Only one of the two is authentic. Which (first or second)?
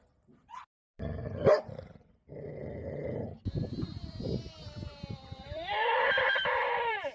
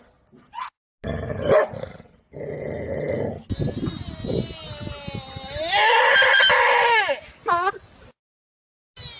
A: second